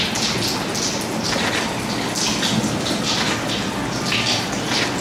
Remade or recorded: recorded